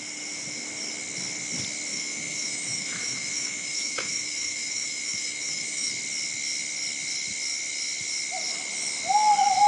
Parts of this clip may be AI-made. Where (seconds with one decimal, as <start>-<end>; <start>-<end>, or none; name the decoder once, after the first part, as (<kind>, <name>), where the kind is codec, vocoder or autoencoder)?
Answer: 1.9-5.9 (autoencoder, DAC-VAE)